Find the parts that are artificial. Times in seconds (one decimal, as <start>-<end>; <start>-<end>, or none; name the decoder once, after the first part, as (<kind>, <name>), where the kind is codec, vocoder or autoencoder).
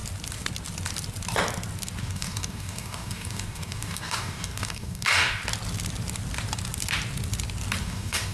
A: 2.0-5.4 (codec, DAC); 7.8-8.3